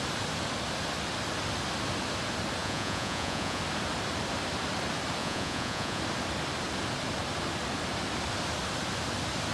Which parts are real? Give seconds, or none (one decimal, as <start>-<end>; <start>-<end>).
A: 0.0-2.6; 3.6-5.2; 6.0-9.5